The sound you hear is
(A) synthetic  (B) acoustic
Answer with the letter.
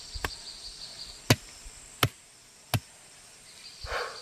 B